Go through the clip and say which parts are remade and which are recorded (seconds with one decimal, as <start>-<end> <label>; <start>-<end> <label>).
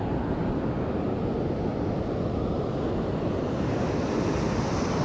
0.0-5.0 recorded